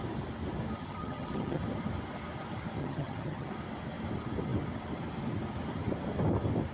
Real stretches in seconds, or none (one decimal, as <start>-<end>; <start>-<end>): 0.0-0.8; 1.6-2.8; 3.5-6.7